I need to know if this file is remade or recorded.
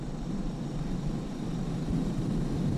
recorded